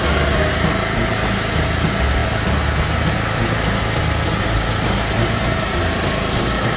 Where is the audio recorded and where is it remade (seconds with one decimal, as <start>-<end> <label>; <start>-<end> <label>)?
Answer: 0.0-6.8 recorded